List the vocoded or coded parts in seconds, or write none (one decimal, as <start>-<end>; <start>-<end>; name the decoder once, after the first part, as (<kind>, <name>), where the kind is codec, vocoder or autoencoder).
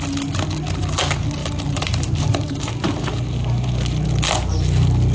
1.4-3.7 (vocoder, BigVGAN v2)